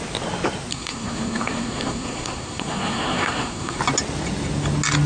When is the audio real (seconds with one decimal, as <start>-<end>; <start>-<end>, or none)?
0.0-0.7; 3.8-5.1